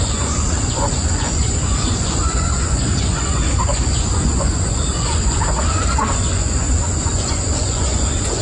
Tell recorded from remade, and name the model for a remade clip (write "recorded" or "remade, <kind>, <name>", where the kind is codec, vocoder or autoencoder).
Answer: remade, vocoder, Vocos